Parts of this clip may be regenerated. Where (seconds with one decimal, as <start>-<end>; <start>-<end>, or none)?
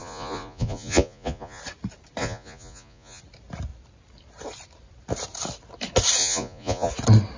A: 0.0-1.6; 2.2-3.2; 6.2-6.9